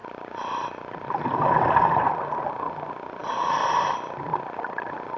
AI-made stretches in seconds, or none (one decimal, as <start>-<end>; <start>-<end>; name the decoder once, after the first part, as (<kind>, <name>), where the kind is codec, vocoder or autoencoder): none